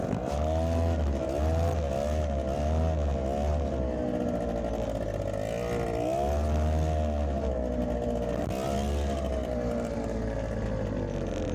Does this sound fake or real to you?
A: real